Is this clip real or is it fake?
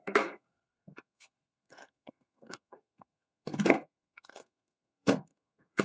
fake